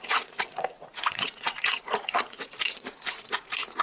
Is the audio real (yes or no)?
no